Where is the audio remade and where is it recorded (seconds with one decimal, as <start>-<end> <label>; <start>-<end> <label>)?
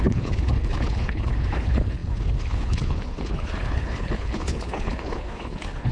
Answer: 0.0-5.9 remade